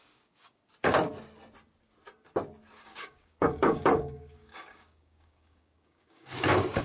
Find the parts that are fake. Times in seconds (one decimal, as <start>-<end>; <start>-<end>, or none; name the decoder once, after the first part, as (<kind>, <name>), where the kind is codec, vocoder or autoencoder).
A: 0.0-0.6 (codec, DAC); 2.8-6.8